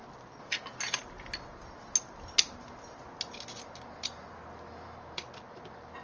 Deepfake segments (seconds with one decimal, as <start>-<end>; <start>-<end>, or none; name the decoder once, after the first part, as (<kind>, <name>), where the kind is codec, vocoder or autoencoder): none